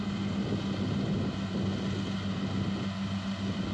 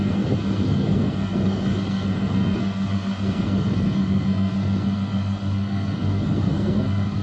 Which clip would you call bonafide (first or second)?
first